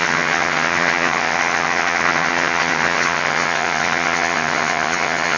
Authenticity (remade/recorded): remade